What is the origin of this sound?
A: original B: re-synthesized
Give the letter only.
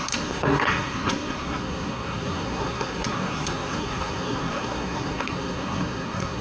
B